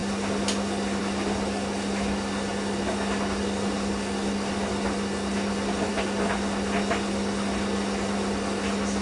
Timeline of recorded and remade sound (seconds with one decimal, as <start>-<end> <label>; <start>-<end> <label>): 0.0-9.0 recorded